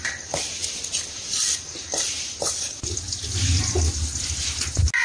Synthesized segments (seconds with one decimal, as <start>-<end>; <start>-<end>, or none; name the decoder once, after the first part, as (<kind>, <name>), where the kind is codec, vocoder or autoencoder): none